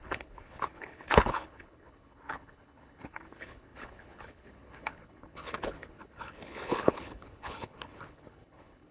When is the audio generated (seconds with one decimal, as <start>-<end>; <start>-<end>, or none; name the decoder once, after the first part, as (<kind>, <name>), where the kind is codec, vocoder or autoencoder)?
0.0-8.9 (codec, HILCodec)